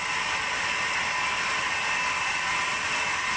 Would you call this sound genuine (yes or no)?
yes